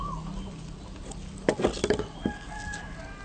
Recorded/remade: recorded